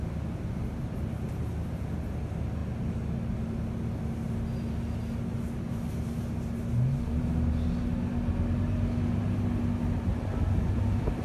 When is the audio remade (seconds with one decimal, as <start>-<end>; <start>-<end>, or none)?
none